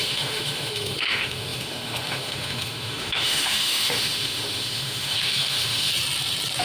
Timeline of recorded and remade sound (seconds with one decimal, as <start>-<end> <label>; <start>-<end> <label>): 0.0-5.9 remade; 5.9-6.6 recorded